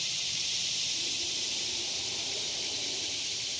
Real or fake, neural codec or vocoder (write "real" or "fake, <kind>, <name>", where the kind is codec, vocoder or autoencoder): fake, vocoder, BigVGAN v2